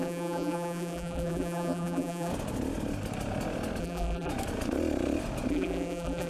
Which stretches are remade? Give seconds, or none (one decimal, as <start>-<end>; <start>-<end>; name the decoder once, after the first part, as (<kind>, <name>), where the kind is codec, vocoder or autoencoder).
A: 0.0-2.3 (vocoder, BigVGAN v2); 3.8-4.3; 5.5-6.3